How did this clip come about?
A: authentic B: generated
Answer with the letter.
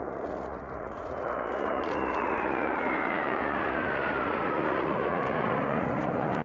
B